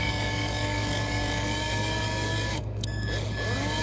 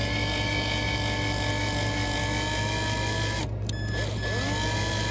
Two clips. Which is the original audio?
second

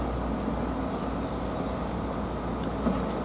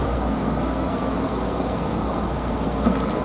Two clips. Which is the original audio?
first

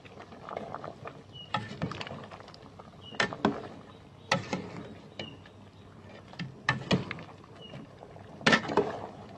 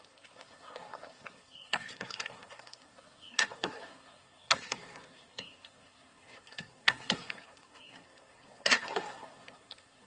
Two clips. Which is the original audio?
first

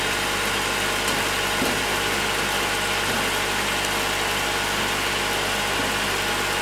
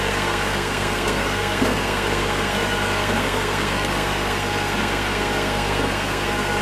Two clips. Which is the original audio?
first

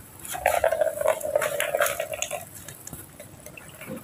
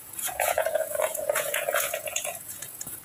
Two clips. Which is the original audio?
first